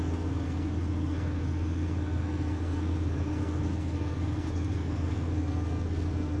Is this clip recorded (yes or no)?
no